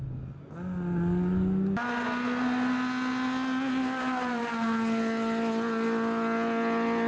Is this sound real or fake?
real